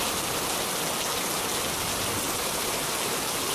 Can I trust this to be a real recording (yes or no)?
yes